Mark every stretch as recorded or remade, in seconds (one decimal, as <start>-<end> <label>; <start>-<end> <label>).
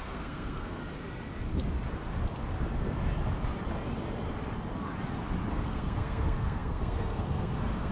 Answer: 0.0-0.8 remade; 0.8-5.5 recorded; 5.5-7.9 remade